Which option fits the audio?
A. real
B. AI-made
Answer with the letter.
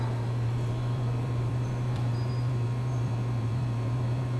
B